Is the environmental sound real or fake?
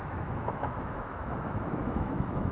fake